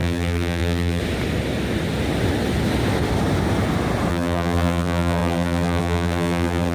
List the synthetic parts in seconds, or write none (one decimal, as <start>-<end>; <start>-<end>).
0.0-1.0; 4.1-6.7